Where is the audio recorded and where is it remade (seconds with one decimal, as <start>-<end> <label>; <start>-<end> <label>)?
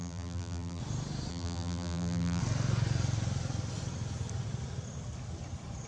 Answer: 0.0-0.8 remade; 0.8-1.3 recorded; 1.3-2.4 remade; 2.4-5.9 recorded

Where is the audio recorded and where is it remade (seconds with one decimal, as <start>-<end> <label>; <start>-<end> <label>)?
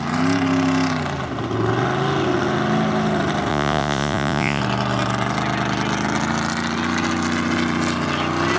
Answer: 0.0-3.5 recorded; 3.5-4.6 remade; 4.6-8.6 recorded